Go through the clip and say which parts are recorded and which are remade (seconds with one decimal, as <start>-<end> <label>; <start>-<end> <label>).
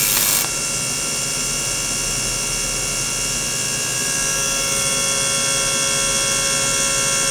0.0-7.3 recorded